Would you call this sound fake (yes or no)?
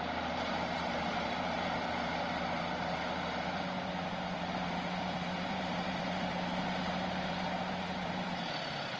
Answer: yes